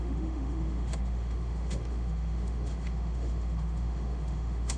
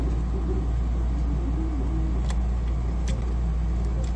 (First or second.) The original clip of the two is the second